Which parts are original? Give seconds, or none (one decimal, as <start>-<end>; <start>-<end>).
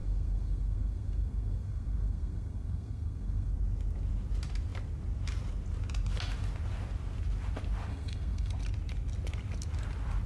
3.5-7.9; 8.5-10.3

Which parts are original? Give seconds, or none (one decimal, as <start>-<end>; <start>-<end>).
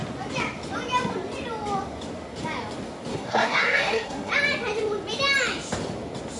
0.0-3.1; 4.3-6.4